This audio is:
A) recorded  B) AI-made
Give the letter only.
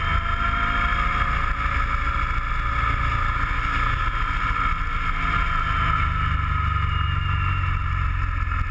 A